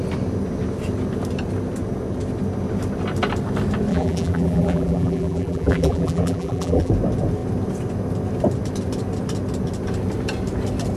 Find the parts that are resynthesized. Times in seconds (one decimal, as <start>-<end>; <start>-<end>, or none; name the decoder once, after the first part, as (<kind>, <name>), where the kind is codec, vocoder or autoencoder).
3.9-6.9 (vocoder, BigVGAN v2)